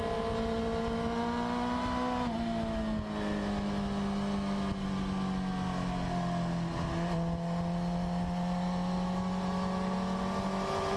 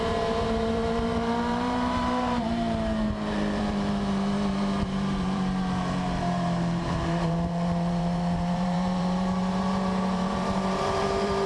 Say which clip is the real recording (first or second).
first